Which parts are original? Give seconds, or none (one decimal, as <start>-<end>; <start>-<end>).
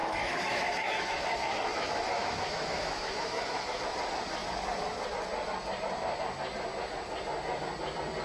3.8-8.2